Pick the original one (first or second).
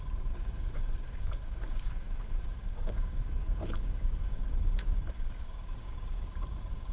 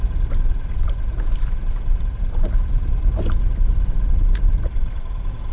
second